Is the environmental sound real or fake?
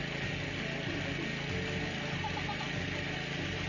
real